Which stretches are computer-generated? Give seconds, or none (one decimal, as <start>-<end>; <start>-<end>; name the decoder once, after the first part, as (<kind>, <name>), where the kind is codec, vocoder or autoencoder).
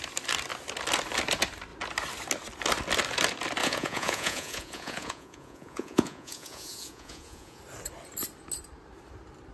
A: 3.6-7.6 (vocoder, Vocos)